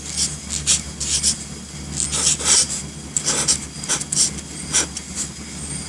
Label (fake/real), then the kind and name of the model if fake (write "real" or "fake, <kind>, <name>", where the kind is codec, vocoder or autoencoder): real